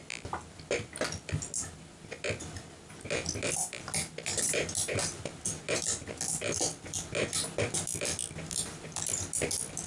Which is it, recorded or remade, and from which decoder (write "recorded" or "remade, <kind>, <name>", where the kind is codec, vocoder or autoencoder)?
recorded